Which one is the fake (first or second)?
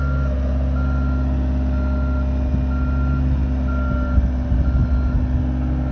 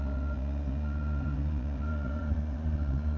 second